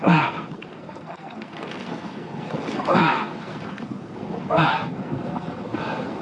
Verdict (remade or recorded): remade